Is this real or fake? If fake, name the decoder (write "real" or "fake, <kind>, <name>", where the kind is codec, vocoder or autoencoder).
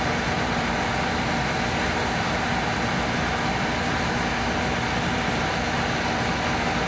real